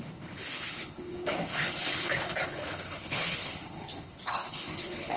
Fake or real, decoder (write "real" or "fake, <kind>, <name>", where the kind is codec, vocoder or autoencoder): fake, codec, HILCodec